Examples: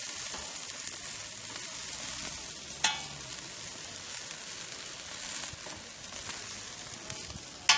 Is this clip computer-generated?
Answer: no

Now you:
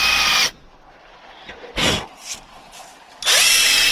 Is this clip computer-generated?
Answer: yes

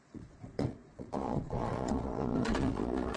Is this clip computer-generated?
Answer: yes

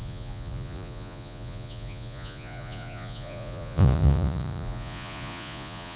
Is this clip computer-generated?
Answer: yes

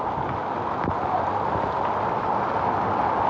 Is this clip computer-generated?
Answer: no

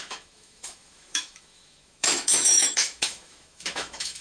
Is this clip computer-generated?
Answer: yes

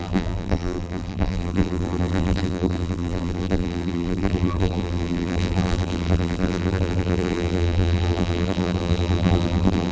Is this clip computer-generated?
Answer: yes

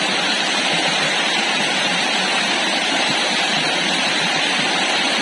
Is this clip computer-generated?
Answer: yes